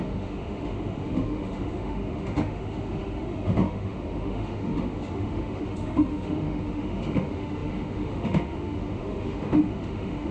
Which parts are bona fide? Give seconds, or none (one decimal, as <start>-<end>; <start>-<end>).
none